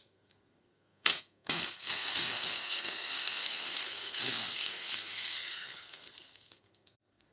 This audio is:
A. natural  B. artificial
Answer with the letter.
B